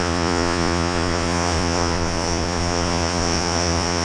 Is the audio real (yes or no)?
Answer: no